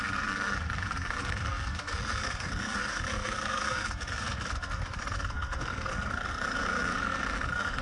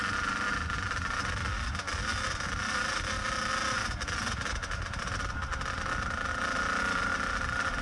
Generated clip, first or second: first